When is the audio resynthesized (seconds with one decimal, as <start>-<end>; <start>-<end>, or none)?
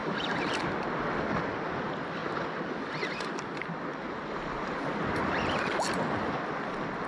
none